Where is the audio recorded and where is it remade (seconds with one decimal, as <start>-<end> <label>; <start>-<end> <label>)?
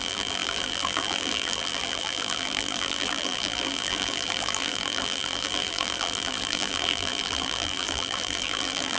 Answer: 0.0-9.0 remade